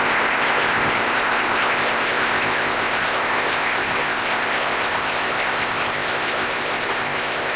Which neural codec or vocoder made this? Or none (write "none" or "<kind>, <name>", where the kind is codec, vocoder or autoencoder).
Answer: codec, ZipCodec